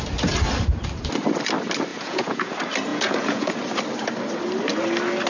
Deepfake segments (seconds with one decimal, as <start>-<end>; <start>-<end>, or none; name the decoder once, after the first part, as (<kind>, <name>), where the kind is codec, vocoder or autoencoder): 1.9-2.5 (vocoder, Vocos); 2.9-3.5